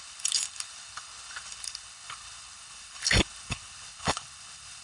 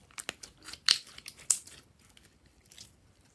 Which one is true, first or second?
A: second